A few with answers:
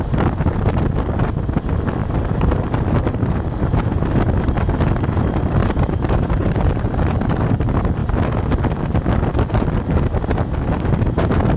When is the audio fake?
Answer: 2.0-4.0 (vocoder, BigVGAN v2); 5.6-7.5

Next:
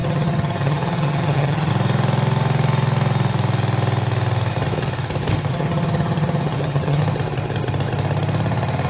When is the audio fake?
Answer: 0.0-1.7 (vocoder, HiFi-GAN); 5.5-7.0